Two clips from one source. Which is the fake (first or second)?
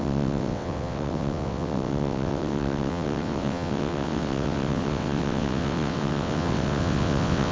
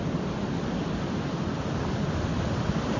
first